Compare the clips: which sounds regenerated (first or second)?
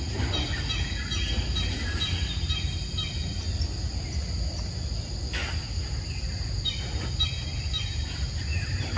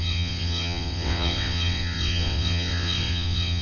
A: second